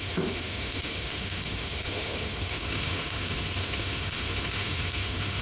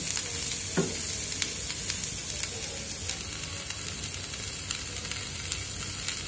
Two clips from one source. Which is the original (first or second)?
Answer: second